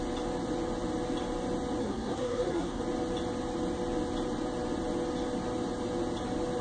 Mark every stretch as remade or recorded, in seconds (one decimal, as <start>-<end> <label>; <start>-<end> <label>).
0.0-1.8 recorded; 1.8-2.8 remade; 2.8-6.6 recorded